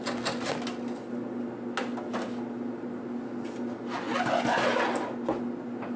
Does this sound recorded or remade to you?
recorded